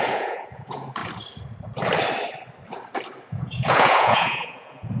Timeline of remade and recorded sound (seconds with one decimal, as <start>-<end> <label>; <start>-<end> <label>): 0.0-1.0 remade; 1.0-3.3 recorded; 3.3-5.0 remade